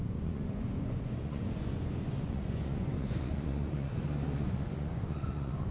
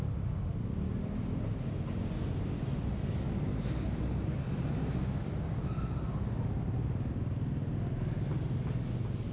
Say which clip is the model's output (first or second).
first